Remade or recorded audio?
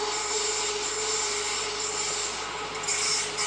recorded